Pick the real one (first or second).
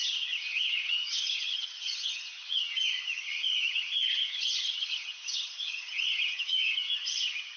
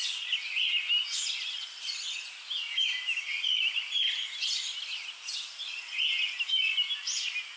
second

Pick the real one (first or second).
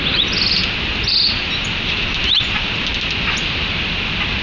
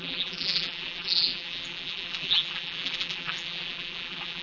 first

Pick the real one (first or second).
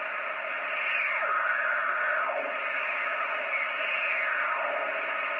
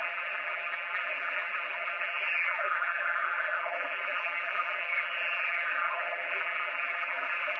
first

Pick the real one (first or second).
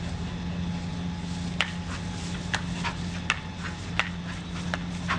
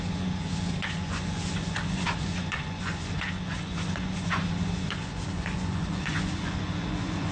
first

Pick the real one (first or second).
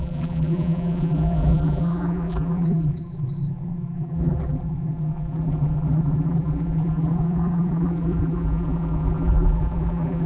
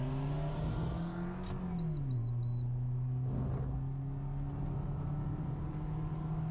second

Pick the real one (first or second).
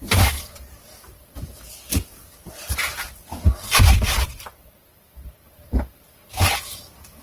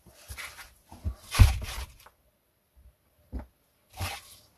second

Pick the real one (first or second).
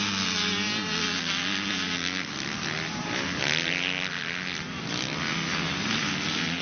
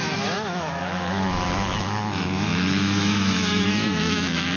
first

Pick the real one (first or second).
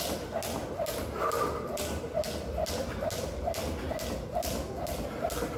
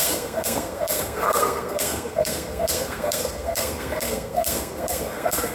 first